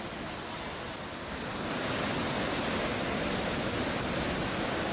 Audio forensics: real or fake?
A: real